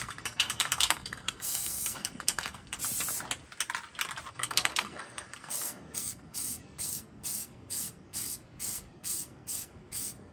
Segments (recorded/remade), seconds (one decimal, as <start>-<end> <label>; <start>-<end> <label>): 0.0-2.8 remade; 2.8-4.3 recorded; 4.3-10.3 remade

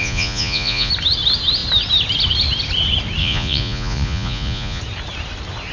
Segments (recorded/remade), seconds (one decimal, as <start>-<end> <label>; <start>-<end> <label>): 0.0-0.9 remade; 0.9-3.2 recorded; 3.2-4.8 remade; 4.8-5.7 recorded

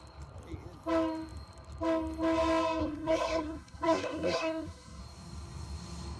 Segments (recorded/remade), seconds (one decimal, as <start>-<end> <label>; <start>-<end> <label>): 0.0-2.8 recorded; 2.8-5.0 remade; 5.0-6.2 recorded

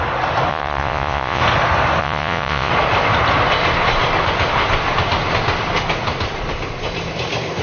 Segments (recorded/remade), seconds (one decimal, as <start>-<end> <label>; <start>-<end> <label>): 0.0-0.5 recorded; 0.5-1.4 remade; 1.4-2.0 recorded; 2.0-2.7 remade; 2.7-7.6 recorded